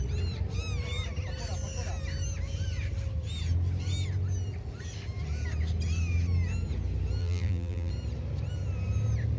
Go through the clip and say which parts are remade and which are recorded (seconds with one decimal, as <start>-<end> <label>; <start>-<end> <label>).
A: 0.0-7.2 recorded; 7.2-7.9 remade; 7.9-9.4 recorded